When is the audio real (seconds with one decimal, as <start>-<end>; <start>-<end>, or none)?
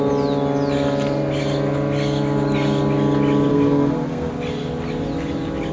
0.0-3.5; 4.3-5.7